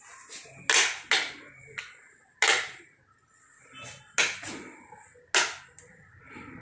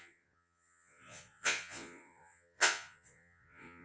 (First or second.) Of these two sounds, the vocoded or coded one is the second